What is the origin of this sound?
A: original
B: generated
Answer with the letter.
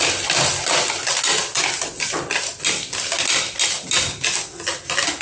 A